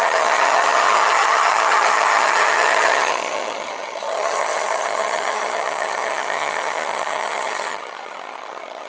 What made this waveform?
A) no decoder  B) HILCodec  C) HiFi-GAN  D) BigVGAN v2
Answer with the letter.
C